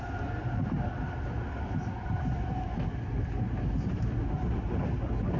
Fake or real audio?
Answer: real